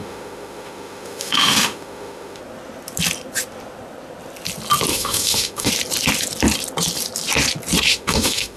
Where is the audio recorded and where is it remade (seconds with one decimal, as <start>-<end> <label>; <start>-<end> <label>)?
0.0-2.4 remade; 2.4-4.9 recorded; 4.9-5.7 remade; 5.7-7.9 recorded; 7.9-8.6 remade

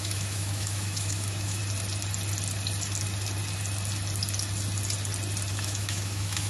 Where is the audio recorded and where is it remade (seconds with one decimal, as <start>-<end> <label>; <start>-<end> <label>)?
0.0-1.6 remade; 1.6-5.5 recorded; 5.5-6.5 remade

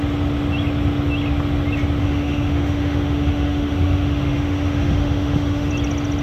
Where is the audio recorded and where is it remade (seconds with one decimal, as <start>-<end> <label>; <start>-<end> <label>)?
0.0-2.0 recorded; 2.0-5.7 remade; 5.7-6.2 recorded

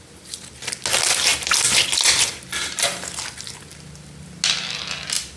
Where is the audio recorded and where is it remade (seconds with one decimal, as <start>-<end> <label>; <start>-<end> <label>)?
0.0-5.4 recorded

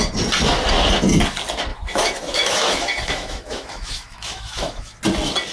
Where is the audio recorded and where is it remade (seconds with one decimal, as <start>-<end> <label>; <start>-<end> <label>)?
0.0-1.7 recorded; 1.7-5.0 remade; 5.0-5.5 recorded

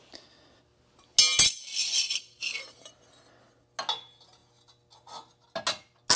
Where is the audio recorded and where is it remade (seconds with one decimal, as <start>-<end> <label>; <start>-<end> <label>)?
0.0-6.2 recorded